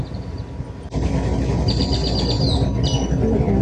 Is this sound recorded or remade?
recorded